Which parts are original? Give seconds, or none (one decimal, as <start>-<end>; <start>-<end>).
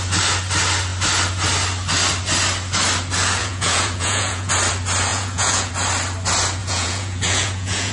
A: 0.0-3.4; 4.5-5.1; 5.7-6.6